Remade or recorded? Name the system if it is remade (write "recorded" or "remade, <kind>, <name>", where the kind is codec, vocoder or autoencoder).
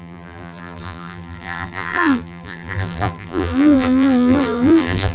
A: remade, vocoder, BigVGAN v2